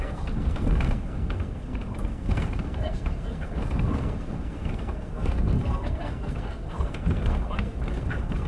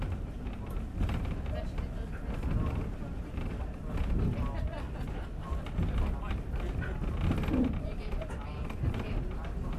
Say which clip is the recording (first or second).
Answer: second